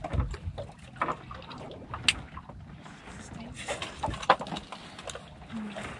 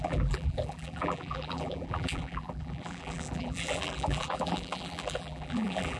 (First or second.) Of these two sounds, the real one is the first